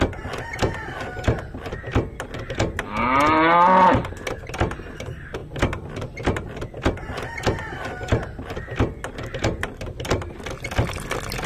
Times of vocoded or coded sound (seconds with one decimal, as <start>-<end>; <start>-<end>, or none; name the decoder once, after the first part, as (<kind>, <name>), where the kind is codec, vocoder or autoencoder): none